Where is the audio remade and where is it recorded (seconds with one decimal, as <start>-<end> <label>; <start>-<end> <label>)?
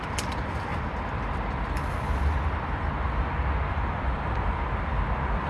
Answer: 0.0-0.7 remade; 0.7-3.7 recorded; 3.7-5.5 remade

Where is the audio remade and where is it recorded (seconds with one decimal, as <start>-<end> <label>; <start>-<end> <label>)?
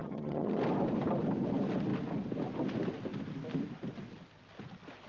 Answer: 0.0-0.6 remade; 0.6-5.1 recorded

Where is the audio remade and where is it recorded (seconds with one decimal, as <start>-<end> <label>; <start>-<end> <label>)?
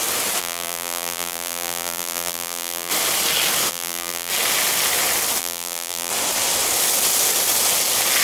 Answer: 0.0-0.4 recorded; 0.4-2.9 remade; 2.9-3.7 recorded; 3.7-4.3 remade; 4.3-5.4 recorded; 5.4-6.1 remade; 6.1-8.2 recorded